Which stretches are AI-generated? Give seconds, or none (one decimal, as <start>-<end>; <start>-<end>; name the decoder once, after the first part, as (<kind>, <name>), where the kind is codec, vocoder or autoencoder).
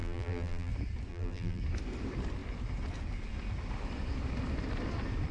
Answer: 0.0-0.7 (vocoder, BigVGAN v2); 1.1-1.6